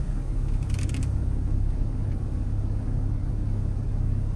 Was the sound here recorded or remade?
remade